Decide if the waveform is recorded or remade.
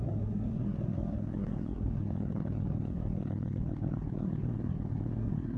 remade